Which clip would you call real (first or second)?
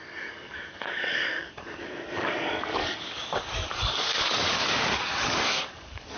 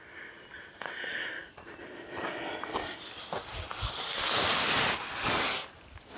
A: second